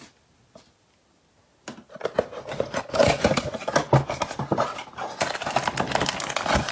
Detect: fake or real real